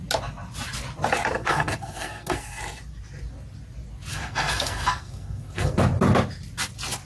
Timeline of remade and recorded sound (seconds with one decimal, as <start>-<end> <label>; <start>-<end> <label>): 0.0-1.4 recorded; 1.4-2.6 remade; 2.6-4.1 recorded; 4.1-5.8 remade; 5.8-7.1 recorded